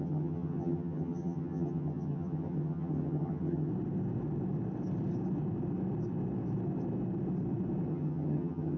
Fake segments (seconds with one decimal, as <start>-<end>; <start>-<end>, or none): 0.0-3.7; 7.9-8.8

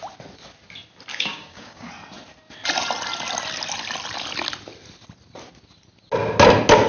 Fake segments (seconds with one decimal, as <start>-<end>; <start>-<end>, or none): 1.1-1.9